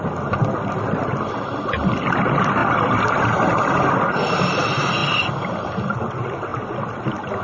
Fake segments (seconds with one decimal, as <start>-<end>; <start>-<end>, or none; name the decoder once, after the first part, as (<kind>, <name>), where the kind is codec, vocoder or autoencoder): 2.6-3.9 (vocoder, BigVGAN v2); 5.0-6.0; 6.5-7.4